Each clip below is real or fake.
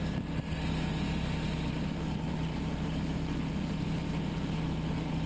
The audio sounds real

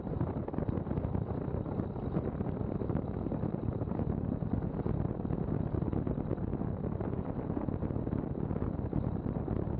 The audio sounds real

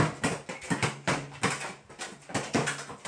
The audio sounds real